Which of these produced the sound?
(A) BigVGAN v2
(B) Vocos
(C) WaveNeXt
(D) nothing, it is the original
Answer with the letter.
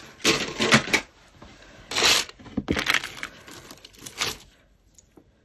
D